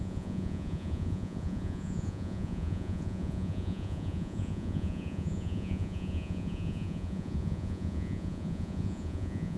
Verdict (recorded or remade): remade